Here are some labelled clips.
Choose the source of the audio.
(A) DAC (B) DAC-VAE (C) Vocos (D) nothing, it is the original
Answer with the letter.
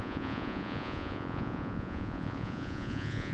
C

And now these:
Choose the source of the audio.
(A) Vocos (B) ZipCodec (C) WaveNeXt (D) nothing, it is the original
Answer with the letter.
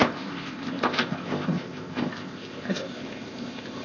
B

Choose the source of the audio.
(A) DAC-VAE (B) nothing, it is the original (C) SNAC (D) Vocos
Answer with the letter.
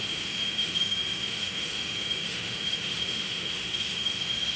A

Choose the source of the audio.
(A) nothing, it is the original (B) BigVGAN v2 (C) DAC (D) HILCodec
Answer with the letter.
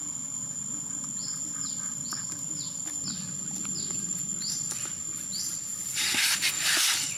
A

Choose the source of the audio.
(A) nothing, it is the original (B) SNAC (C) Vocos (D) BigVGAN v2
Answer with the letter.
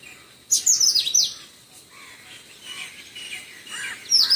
A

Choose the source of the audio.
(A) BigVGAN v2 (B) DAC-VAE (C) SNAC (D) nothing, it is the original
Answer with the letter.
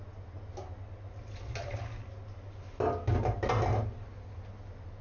D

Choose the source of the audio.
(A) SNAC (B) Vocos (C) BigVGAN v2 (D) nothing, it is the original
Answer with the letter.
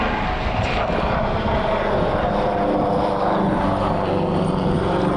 D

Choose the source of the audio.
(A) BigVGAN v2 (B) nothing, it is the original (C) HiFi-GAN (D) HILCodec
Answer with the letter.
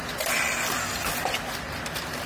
B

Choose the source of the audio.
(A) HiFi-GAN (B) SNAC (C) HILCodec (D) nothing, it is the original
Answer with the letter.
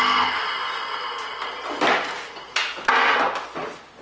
D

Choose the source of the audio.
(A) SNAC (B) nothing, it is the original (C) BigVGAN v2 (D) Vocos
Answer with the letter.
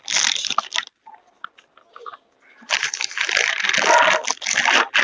B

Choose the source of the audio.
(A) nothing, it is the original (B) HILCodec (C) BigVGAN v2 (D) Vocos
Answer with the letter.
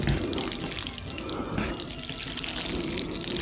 A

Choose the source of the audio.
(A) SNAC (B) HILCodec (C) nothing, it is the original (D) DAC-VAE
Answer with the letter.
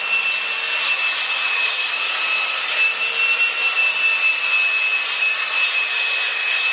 C